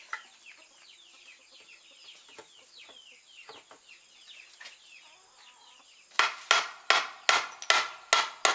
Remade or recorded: recorded